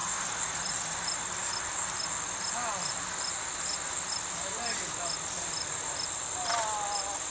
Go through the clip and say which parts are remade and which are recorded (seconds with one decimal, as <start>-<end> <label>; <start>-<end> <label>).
0.0-7.3 recorded